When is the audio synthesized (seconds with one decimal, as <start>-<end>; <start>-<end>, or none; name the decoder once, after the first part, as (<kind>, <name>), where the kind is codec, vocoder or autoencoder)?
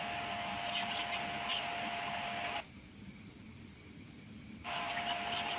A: 1.5-4.9 (vocoder, BigVGAN v2)